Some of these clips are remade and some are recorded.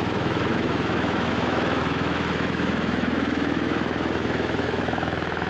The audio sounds remade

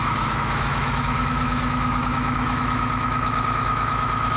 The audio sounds remade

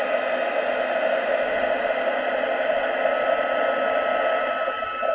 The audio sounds recorded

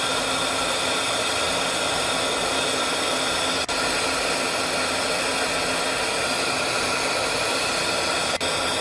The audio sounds recorded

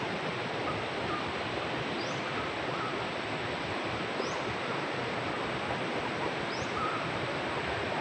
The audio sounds recorded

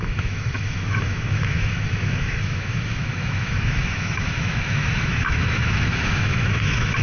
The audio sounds remade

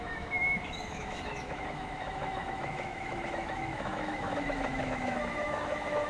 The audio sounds remade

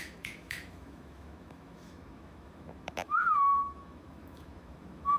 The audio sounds remade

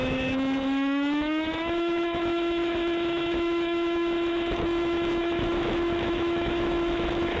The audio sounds remade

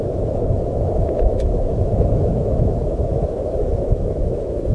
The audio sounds remade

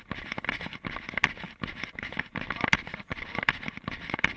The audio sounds recorded